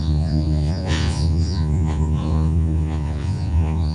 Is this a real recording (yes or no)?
no